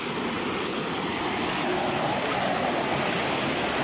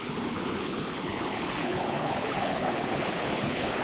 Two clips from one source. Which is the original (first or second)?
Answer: first